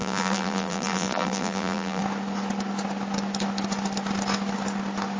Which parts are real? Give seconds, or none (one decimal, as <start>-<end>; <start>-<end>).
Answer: 2.0-5.2